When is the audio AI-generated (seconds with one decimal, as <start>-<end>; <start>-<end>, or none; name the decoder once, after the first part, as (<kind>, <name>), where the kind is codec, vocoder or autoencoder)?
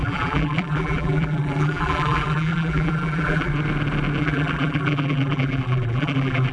0.0-3.5 (vocoder, BigVGAN v2); 4.2-6.5